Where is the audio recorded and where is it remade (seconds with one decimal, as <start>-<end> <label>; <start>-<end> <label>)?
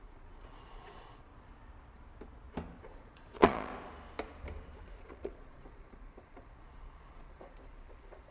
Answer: 0.0-1.3 remade; 1.3-2.8 recorded; 2.8-3.7 remade; 3.7-5.0 recorded; 5.0-8.3 remade